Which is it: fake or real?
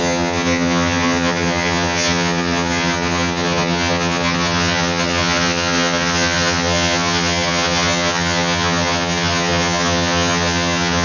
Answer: fake